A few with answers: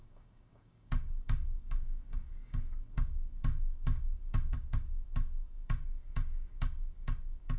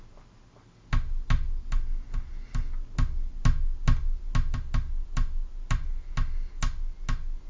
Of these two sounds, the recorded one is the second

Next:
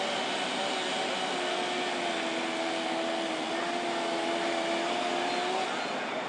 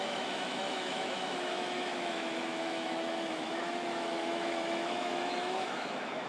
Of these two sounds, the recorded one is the first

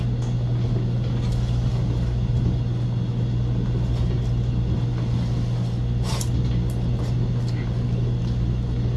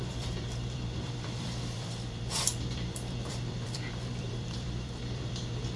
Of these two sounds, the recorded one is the first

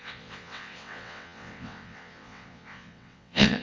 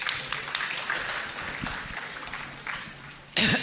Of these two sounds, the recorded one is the second